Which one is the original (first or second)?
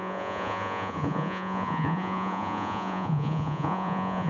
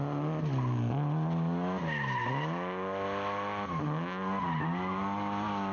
second